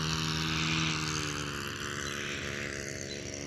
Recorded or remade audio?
recorded